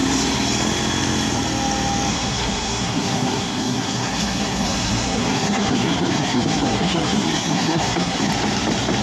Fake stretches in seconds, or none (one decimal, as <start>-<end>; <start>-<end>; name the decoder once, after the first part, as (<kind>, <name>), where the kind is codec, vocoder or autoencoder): 2.1-8.3 (codec, SNAC)